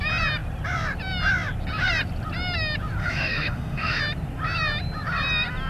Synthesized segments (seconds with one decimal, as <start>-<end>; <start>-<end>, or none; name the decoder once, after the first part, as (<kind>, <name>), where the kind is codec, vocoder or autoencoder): 3.0-4.0 (autoencoder, DAC-VAE)